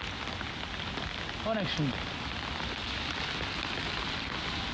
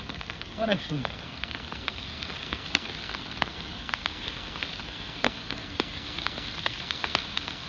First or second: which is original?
first